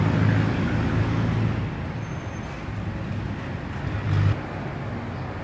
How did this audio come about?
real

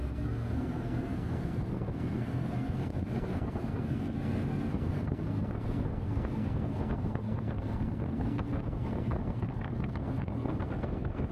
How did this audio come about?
fake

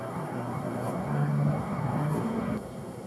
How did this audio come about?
fake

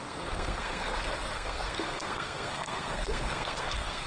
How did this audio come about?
fake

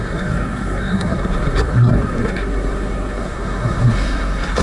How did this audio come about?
fake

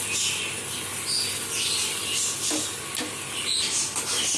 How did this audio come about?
real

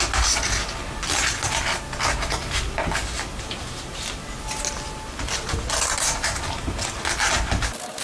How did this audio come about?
real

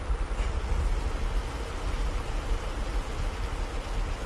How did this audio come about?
real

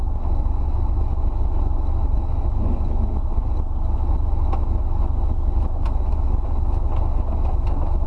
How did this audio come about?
real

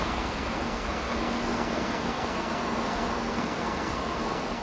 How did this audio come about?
fake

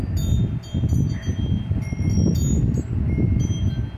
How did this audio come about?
real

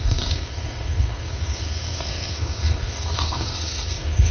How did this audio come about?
fake